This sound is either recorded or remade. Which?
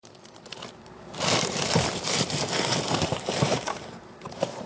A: remade